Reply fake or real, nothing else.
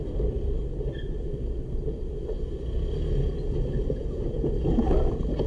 real